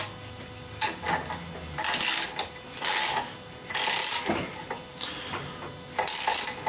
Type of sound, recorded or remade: recorded